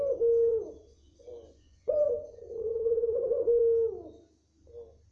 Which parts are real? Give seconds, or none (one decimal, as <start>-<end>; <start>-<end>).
0.0-0.5; 3.6-5.1